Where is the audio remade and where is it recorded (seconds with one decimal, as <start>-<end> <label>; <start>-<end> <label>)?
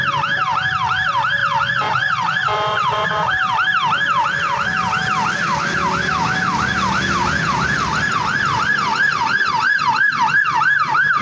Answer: 0.0-1.4 recorded; 1.4-3.3 remade; 3.3-11.2 recorded